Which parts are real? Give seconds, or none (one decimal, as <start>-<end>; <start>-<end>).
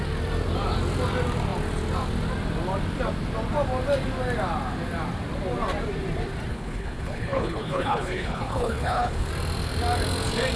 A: 0.0-6.5; 9.3-10.6